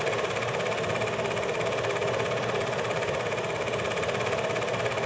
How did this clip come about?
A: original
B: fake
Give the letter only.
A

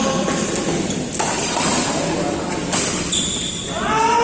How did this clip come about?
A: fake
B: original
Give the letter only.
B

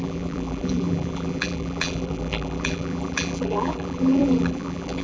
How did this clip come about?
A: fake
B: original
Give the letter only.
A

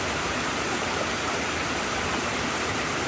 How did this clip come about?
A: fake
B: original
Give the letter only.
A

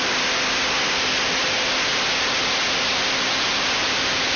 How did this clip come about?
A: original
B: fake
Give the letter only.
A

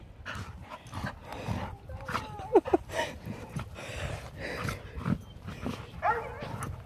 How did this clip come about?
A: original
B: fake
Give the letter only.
A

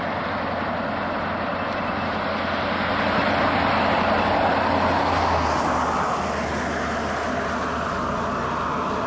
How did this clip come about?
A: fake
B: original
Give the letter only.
B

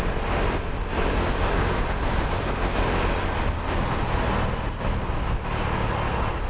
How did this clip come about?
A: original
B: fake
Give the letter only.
A